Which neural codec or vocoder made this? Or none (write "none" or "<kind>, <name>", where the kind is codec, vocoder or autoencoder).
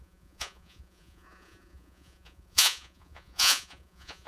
vocoder, Vocos